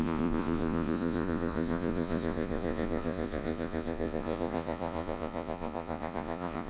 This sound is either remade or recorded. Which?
remade